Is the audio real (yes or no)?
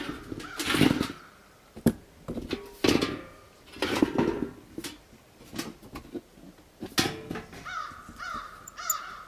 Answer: yes